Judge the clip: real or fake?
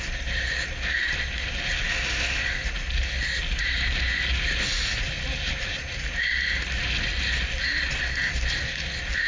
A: real